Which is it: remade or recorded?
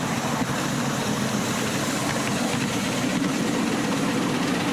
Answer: recorded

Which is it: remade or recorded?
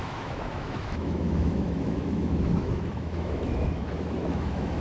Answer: remade